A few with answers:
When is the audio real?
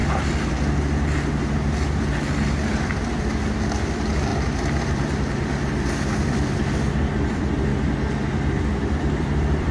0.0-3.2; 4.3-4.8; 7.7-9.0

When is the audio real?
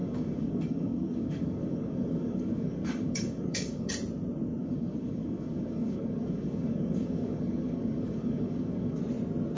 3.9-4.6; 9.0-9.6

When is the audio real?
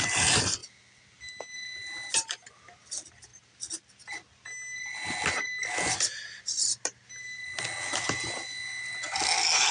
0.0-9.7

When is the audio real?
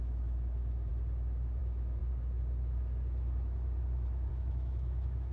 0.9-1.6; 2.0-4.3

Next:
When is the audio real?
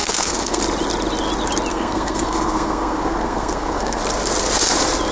0.6-1.7; 4.0-5.1